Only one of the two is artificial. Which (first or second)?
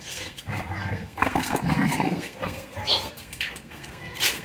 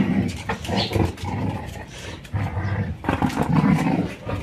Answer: first